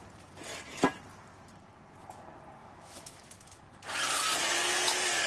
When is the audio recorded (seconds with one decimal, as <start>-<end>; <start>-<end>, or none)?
0.0-2.6; 3.6-5.3

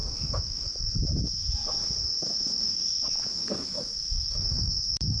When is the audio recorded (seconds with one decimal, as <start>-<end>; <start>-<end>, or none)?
0.9-2.0

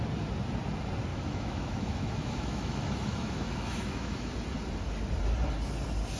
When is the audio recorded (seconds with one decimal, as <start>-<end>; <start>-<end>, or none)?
0.0-1.1; 4.3-6.2

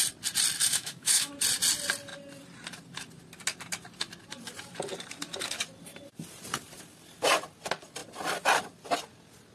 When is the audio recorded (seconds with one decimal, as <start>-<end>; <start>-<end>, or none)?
0.0-0.6; 1.3-9.5